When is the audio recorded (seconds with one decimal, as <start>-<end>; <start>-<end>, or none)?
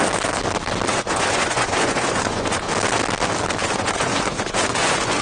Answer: 0.0-0.9; 2.7-3.6